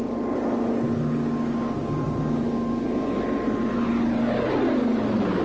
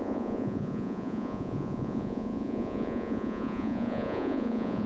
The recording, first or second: first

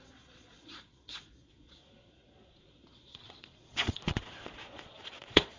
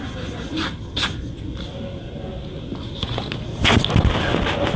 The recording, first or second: second